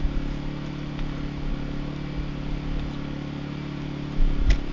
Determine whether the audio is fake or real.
real